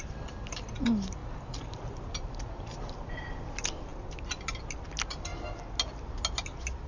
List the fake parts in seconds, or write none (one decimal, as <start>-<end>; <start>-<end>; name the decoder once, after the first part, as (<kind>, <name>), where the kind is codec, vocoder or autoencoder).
none